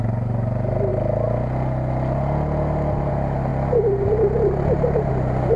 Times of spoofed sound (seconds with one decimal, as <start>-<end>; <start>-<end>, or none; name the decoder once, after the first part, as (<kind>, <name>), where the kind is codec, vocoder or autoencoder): none